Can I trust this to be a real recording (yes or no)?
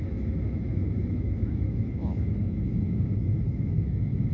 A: no